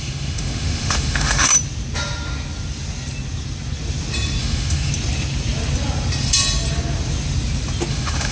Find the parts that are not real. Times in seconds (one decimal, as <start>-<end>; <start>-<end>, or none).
0.0-1.5; 4.4-4.9; 7.9-8.3